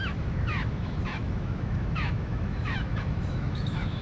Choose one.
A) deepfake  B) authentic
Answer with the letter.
A